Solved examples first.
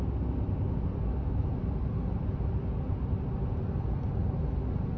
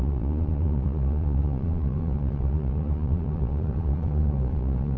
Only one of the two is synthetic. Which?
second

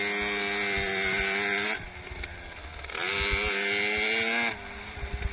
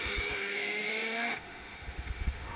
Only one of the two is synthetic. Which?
second